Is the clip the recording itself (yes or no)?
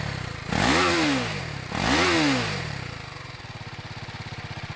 yes